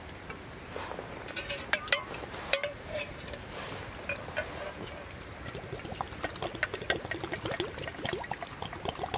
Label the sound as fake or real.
real